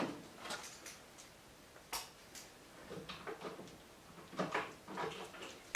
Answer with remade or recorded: recorded